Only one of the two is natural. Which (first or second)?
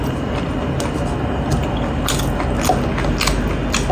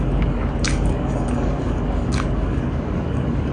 first